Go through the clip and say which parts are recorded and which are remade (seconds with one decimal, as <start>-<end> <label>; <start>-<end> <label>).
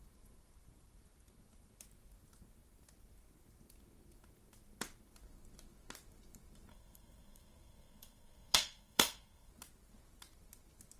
0.0-6.7 recorded; 6.7-9.5 remade; 9.5-11.0 recorded